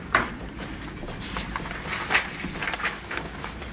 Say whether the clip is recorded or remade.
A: recorded